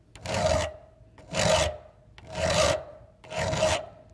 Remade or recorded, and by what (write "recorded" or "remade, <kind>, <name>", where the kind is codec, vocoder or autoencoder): recorded